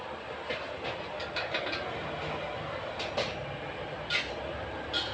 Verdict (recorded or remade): recorded